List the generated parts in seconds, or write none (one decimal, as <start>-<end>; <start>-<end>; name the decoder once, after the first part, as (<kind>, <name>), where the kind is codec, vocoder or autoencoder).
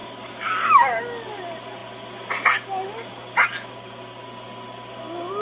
0.0-1.4 (codec, DAC)